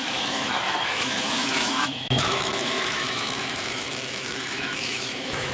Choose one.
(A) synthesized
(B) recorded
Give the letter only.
A